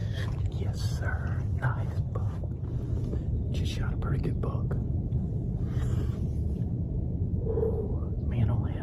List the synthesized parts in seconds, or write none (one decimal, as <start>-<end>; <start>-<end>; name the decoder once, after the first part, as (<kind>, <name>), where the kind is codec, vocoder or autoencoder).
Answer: 0.0-1.4 (vocoder, BigVGAN v2); 4.8-5.6